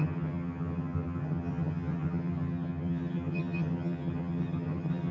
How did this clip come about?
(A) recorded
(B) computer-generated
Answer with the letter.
B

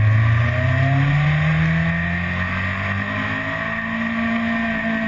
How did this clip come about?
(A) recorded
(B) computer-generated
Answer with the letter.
A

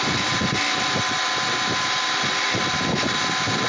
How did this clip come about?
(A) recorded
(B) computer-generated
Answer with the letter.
A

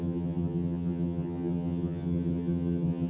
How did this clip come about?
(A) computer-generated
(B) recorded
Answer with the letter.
A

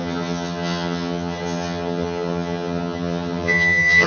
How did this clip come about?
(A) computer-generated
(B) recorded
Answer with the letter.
A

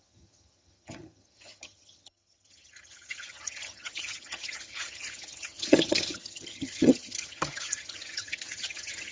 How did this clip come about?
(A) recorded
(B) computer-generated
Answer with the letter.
B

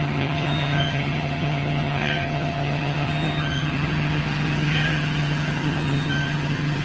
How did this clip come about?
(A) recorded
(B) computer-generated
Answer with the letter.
B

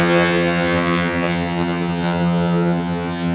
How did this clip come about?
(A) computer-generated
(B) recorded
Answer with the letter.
A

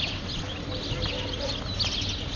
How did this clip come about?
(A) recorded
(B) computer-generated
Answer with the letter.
A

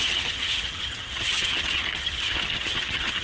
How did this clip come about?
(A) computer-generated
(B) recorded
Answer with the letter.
A